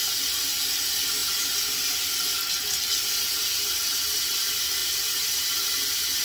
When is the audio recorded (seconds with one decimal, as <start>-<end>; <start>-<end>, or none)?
0.0-4.8; 5.5-6.2